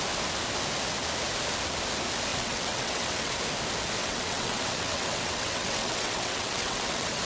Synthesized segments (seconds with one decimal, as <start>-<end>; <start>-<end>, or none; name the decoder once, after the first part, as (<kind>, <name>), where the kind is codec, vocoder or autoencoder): 2.3-3.3 (vocoder, WaveNeXt); 4.0-7.2